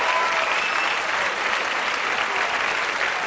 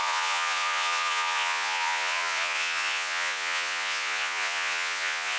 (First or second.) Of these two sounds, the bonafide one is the first